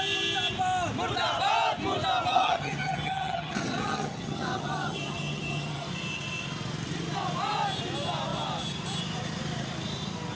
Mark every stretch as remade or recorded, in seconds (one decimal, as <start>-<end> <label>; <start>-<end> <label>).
0.0-2.3 recorded; 2.3-5.9 remade; 5.9-10.3 recorded

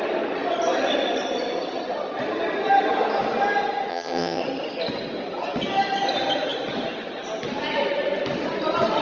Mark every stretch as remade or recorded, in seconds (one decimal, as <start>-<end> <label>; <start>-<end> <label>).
0.0-3.9 recorded; 3.9-4.4 remade; 4.4-9.0 recorded